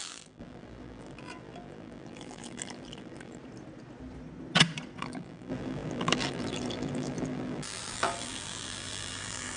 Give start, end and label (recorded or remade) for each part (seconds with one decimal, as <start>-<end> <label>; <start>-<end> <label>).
0.0-3.4 remade; 3.4-5.0 recorded; 5.0-9.6 remade